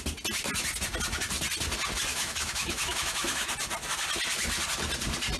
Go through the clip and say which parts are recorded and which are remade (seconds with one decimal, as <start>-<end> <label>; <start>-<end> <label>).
0.0-2.1 recorded; 2.1-3.5 remade; 3.5-5.4 recorded